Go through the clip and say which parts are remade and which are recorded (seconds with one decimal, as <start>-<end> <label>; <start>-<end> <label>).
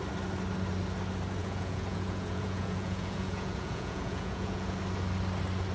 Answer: 0.0-1.4 recorded; 1.4-4.8 remade; 4.8-5.7 recorded